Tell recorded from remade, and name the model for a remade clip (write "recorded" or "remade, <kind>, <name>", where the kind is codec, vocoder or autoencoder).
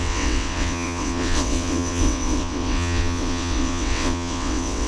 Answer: remade, vocoder, WaveNeXt